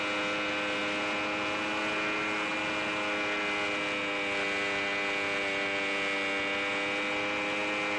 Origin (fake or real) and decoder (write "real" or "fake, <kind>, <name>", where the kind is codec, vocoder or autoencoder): real